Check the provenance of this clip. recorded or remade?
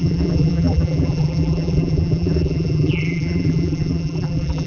remade